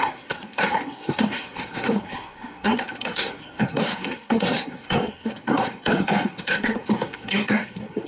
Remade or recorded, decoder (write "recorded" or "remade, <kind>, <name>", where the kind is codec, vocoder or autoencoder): remade, codec, SNAC